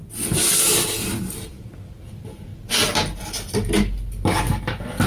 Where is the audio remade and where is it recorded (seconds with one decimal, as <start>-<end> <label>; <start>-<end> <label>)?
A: 0.0-5.1 recorded